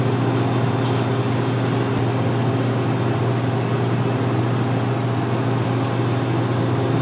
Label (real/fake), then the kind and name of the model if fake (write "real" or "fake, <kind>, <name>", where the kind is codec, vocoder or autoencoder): real